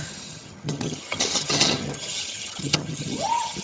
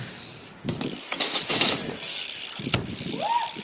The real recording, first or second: second